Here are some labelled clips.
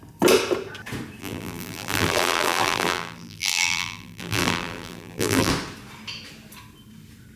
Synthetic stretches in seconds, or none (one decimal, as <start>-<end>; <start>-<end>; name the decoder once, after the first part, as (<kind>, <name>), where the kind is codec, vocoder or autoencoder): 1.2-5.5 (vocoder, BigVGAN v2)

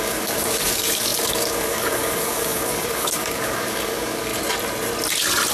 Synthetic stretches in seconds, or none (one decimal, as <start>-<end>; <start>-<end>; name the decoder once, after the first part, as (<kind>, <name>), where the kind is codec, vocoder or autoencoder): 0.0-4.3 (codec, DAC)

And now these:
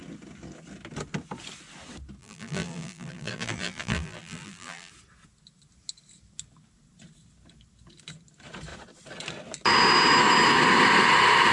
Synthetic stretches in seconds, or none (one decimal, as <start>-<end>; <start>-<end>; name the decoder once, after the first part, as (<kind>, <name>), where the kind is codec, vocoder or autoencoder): 2.2-4.9 (vocoder, BigVGAN v2)

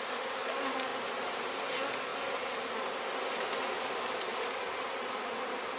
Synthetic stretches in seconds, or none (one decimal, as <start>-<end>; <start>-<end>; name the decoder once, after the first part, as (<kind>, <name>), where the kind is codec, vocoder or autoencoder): 0.9-1.6 (vocoder, BigVGAN v2)

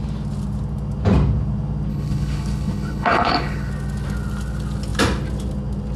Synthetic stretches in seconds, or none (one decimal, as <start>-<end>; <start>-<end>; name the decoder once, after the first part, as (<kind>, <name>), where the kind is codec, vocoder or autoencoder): 1.9-3.7 (codec, HILCodec)